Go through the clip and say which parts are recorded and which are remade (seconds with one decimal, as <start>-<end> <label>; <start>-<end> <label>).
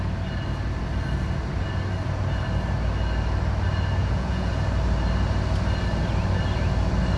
0.0-4.0 recorded; 4.0-4.5 remade; 4.5-7.2 recorded